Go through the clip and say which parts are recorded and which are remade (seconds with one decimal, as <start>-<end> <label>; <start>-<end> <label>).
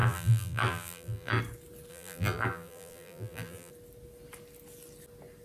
0.0-1.4 remade; 1.4-1.9 recorded; 1.9-3.7 remade; 3.7-5.4 recorded